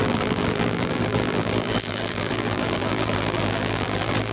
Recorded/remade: remade